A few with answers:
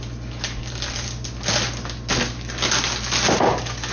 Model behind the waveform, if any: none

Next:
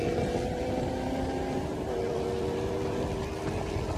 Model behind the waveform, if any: vocoder, BigVGAN v2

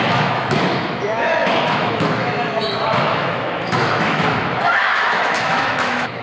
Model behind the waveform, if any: autoencoder, DAC-VAE